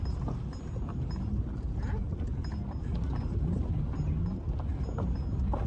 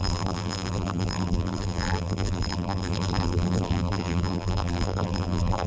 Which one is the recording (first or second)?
first